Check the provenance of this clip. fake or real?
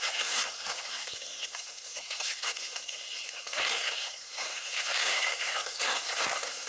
fake